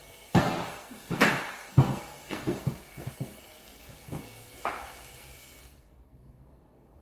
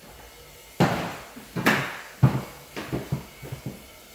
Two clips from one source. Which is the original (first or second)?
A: second